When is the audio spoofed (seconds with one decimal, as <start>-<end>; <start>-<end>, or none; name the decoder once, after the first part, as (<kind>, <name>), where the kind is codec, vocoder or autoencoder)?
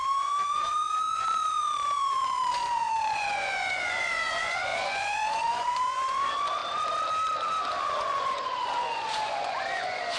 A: 0.0-6.6 (vocoder, Vocos); 7.8-10.2